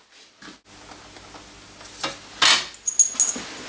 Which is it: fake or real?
real